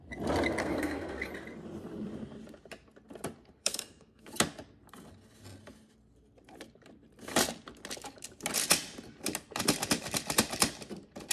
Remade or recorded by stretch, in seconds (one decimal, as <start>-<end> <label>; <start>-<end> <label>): 0.0-0.6 recorded; 0.6-1.3 remade; 1.3-3.6 recorded; 3.6-4.3 remade; 4.3-11.3 recorded